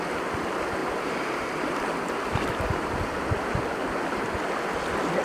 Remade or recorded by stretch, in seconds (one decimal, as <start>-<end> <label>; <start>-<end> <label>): 0.0-0.8 recorded; 0.8-1.5 remade; 1.5-3.8 recorded; 3.8-4.4 remade; 4.4-5.2 recorded